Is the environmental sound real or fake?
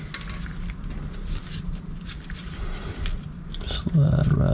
real